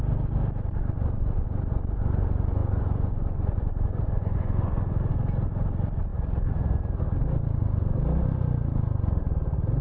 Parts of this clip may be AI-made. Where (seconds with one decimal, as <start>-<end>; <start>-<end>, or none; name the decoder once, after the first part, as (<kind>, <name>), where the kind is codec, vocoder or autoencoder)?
2.6-5.1 (vocoder, Vocos)